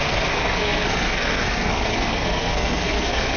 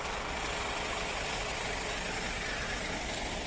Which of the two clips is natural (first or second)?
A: second